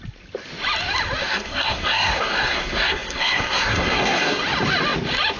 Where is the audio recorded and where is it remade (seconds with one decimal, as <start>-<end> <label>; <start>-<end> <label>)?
0.0-1.2 recorded; 1.2-4.4 remade; 4.4-5.4 recorded